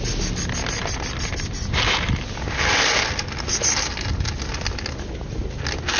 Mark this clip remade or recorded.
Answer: recorded